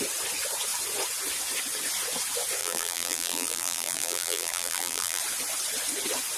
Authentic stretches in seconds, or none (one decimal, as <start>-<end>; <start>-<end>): 0.0-2.6; 5.2-6.4